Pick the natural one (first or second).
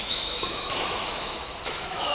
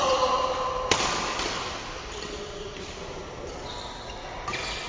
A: second